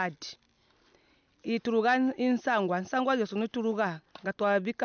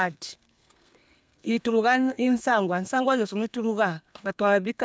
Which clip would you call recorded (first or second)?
first